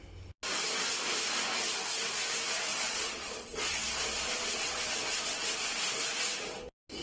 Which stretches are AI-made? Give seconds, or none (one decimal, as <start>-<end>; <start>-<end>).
2.7-3.8